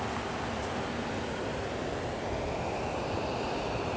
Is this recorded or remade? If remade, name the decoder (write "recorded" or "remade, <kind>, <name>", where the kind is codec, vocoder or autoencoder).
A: recorded